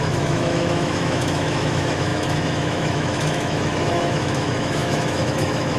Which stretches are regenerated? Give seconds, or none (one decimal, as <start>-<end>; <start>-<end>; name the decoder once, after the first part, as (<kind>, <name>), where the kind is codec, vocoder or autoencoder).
0.0-5.8 (autoencoder, DAC-VAE)